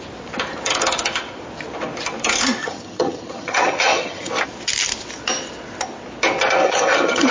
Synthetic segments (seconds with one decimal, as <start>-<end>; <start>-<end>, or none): 2.6-4.3; 6.6-7.3